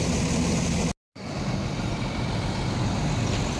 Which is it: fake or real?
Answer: real